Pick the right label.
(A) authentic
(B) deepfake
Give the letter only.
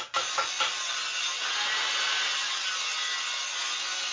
A